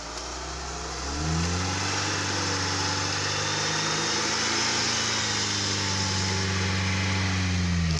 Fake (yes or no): no